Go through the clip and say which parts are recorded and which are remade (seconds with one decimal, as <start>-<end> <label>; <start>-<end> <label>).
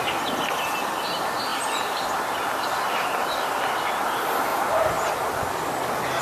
0.0-1.5 recorded; 1.5-2.6 remade; 2.6-4.5 recorded; 4.5-5.3 remade; 5.3-6.2 recorded